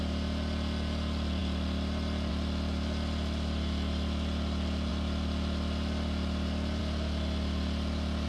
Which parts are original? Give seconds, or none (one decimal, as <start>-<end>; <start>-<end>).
0.0-8.3